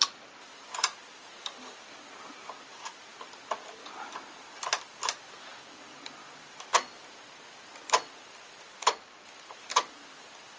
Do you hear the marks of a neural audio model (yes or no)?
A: no